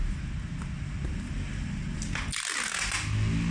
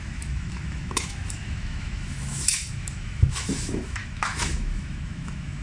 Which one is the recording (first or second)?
first